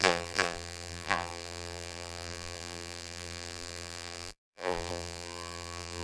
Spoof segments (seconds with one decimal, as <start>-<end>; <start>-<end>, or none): 0.0-6.0